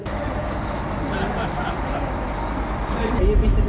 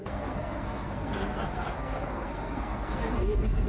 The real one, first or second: first